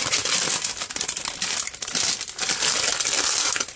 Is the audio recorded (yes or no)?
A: yes